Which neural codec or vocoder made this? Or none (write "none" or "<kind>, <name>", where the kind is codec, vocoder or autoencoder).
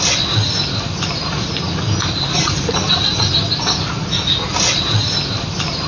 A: none